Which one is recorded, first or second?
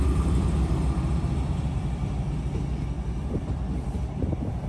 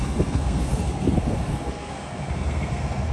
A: first